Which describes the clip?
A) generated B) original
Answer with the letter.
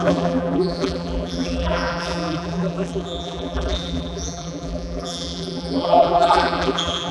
A